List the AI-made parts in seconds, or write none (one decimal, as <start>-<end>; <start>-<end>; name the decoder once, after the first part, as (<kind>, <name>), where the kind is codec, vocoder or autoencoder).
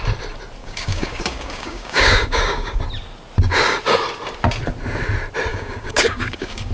0.6-2.8 (codec, DAC); 5.5-6.7